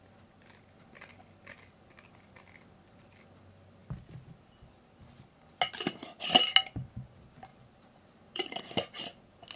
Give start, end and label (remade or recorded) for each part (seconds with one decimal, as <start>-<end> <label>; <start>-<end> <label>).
0.0-7.5 recorded; 7.5-8.6 remade; 8.6-9.6 recorded

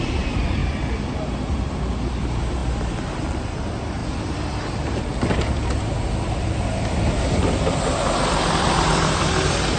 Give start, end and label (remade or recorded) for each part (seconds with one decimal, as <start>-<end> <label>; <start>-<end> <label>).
0.0-4.0 recorded; 4.0-5.0 remade; 5.0-9.8 recorded